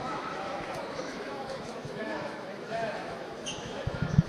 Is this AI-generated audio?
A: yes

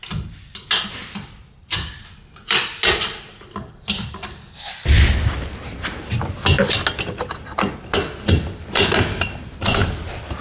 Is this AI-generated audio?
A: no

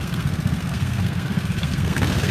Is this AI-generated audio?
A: yes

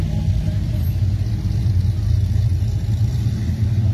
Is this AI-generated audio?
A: no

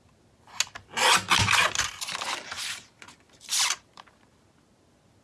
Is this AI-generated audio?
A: no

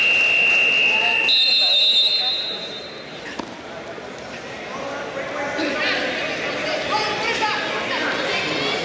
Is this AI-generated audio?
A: no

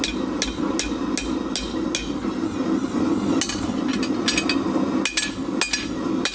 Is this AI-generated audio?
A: no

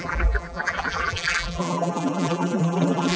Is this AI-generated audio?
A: yes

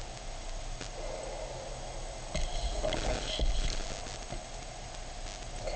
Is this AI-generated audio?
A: no